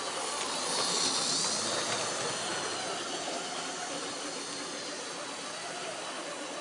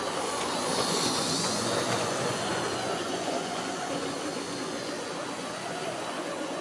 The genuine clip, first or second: first